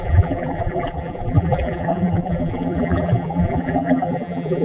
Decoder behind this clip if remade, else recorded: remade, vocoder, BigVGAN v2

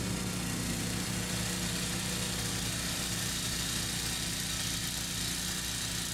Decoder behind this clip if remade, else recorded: recorded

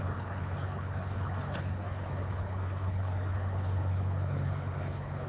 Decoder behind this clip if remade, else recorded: remade, codec, HILCodec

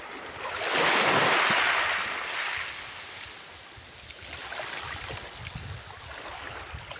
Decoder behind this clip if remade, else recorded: recorded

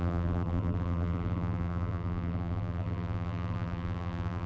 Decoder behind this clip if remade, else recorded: remade, vocoder, BigVGAN v2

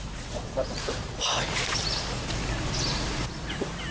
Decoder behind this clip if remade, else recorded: recorded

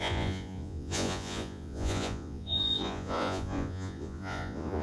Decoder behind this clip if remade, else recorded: remade, vocoder, Vocos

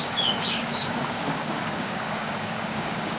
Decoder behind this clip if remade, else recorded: remade, codec, DAC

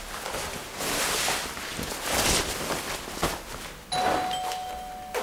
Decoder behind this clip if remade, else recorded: recorded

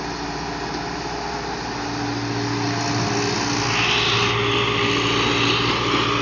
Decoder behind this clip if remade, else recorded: recorded